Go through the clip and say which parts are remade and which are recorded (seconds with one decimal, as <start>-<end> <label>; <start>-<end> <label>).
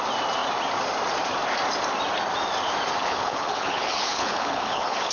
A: 0.0-3.0 recorded; 3.0-5.1 remade